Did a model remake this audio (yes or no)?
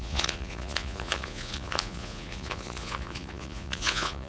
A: yes